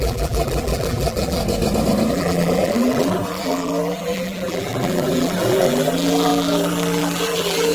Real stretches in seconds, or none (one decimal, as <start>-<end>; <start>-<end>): 1.4-2.1